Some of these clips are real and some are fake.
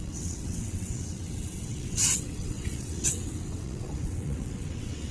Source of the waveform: fake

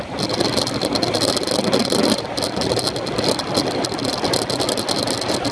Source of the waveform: real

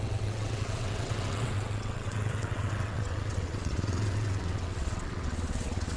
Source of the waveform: fake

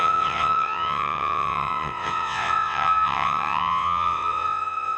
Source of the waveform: fake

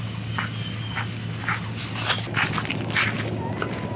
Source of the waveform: real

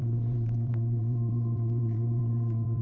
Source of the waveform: fake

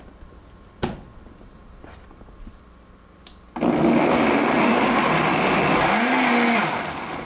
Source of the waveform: real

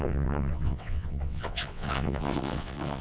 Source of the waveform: fake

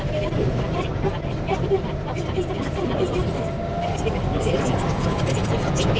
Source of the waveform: real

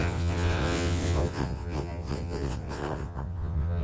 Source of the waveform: fake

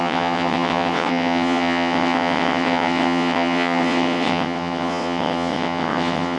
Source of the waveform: fake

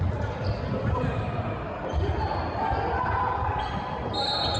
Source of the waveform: real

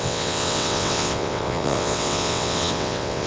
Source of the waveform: fake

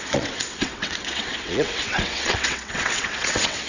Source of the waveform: fake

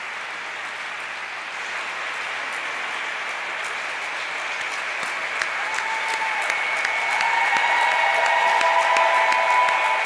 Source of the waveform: real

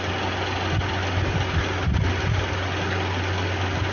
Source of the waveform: real